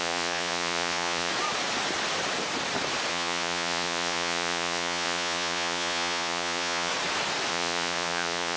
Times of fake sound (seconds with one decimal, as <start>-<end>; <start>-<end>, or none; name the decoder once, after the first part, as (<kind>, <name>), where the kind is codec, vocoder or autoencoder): 0.0-1.3 (vocoder, Vocos); 3.1-6.9; 7.5-8.6